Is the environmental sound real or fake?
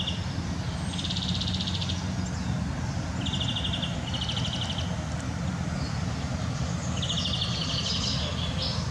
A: real